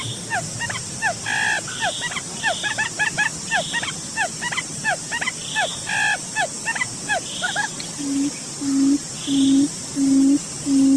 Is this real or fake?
real